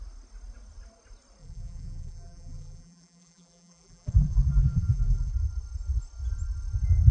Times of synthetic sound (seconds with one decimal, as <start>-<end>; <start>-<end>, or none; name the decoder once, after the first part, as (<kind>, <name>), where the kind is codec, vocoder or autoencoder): 1.4-5.3 (vocoder, BigVGAN v2)